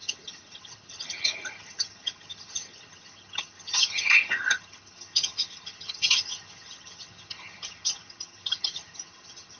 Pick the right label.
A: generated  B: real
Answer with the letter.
A